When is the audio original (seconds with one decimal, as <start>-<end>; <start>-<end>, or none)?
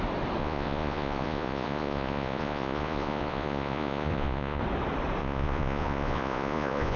0.0-0.4; 4.6-5.2